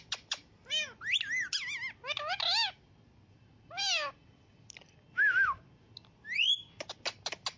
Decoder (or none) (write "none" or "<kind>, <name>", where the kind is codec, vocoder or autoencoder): none